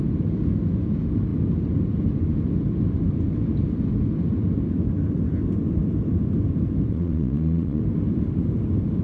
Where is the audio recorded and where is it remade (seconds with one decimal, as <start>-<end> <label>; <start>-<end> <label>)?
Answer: 0.0-6.9 recorded; 6.9-7.8 remade; 7.8-9.0 recorded